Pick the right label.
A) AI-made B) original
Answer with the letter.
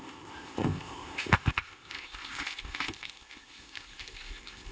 A